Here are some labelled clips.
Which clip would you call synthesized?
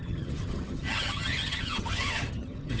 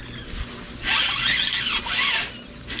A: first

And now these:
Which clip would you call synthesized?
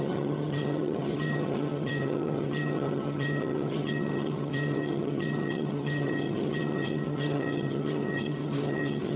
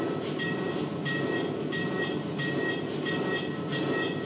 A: first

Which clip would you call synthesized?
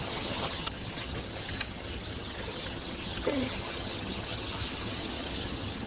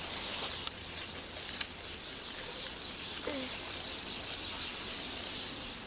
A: first